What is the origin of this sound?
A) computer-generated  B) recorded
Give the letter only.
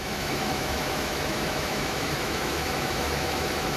A